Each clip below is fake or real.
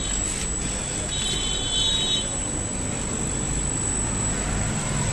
real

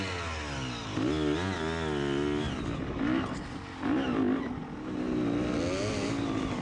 real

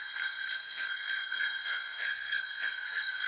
fake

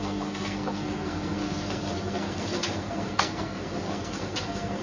fake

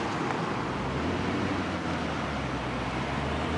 real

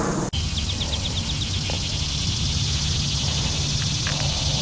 real